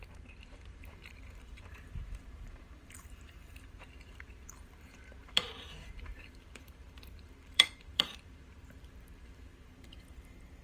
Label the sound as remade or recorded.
remade